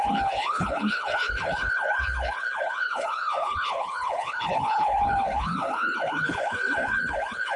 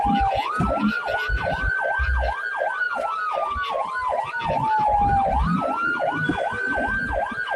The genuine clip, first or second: second